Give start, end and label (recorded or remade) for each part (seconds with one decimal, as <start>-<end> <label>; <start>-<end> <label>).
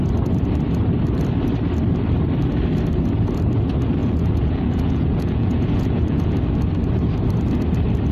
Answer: 0.0-4.0 recorded; 4.0-6.3 remade; 6.3-8.1 recorded